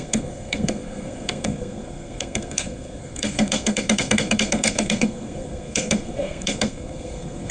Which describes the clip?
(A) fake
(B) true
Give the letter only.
A